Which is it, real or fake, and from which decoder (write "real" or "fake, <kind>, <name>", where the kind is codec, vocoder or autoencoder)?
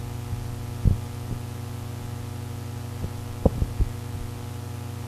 real